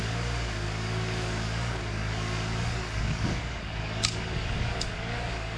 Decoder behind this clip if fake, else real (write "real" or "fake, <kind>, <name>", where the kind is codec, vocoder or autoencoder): fake, codec, DAC